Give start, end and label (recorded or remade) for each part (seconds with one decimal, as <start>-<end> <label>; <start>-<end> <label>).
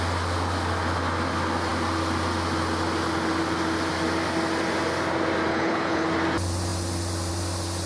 0.0-5.5 recorded; 5.5-6.1 remade; 6.1-7.8 recorded